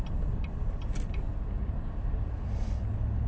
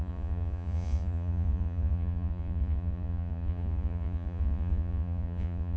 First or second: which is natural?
first